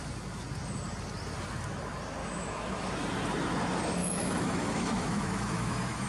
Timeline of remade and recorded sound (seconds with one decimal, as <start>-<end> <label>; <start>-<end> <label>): 0.0-2.2 recorded; 2.2-2.9 remade; 2.9-4.0 recorded; 4.0-6.1 remade